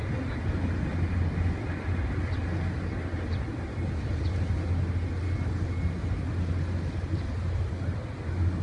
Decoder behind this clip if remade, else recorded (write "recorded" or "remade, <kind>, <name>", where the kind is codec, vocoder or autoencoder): recorded